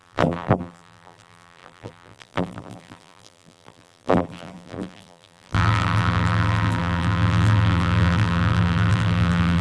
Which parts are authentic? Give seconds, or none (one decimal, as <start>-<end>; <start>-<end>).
none